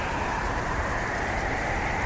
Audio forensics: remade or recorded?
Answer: recorded